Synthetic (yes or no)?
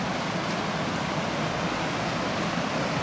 no